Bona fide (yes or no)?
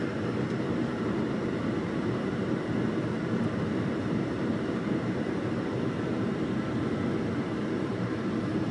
no